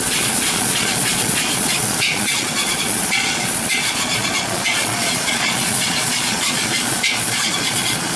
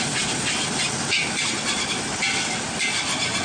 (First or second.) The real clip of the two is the second